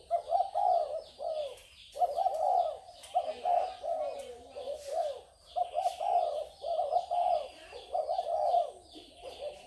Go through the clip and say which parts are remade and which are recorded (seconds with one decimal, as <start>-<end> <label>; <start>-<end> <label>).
0.0-9.7 recorded